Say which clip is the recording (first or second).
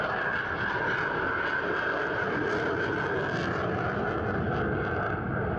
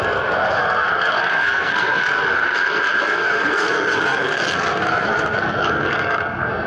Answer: first